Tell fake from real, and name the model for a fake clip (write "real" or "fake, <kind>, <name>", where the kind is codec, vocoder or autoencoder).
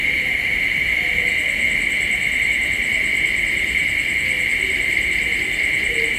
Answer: real